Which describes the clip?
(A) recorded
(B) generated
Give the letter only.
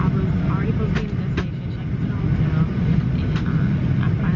A